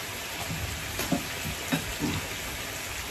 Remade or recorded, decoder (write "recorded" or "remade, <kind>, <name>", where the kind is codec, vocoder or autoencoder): recorded